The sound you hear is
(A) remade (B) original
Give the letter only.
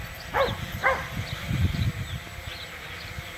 B